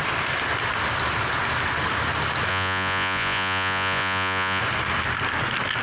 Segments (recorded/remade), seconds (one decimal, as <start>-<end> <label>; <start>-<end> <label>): 0.0-2.5 recorded; 2.5-4.6 remade; 4.6-5.8 recorded